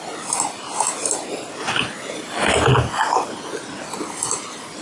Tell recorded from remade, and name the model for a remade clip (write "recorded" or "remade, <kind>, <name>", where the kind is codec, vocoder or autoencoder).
recorded